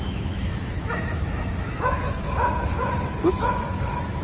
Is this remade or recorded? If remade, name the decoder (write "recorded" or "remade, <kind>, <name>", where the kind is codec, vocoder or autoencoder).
remade, autoencoder, DAC-VAE